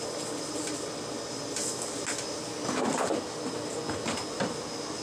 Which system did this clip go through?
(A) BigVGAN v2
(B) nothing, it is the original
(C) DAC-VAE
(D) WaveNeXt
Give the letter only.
B